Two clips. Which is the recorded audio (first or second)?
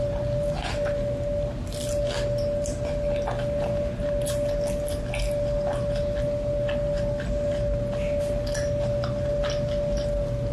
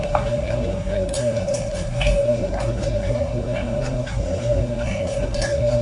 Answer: first